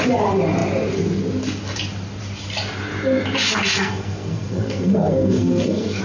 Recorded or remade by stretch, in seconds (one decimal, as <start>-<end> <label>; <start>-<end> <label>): 0.0-3.8 recorded; 3.8-6.0 remade